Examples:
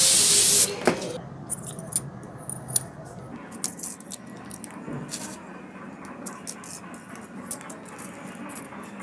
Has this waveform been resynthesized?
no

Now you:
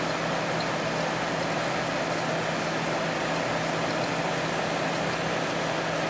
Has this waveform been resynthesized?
no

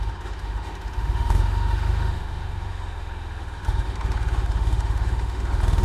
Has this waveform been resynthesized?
yes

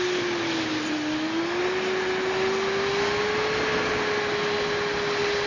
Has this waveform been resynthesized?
no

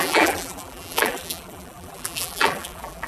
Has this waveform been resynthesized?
yes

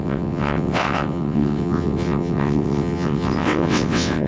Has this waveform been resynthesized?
yes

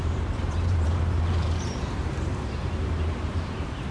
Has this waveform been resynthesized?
yes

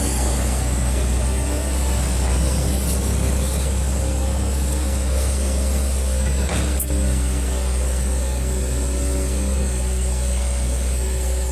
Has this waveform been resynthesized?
yes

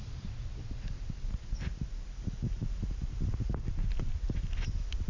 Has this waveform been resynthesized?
no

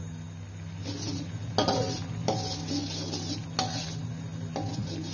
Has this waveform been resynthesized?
no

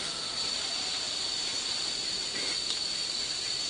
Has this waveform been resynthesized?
no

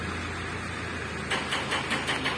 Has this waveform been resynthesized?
no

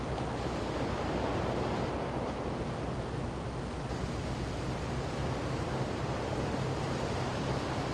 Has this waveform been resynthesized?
no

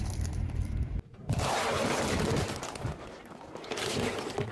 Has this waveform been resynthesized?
no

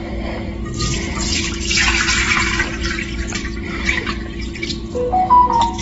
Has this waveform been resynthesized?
no